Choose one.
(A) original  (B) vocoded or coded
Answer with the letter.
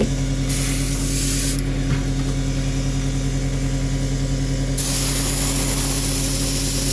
A